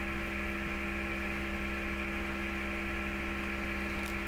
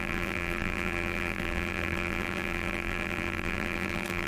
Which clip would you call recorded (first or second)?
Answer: first